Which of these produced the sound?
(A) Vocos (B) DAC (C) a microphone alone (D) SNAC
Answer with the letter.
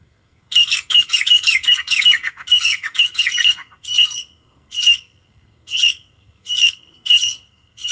D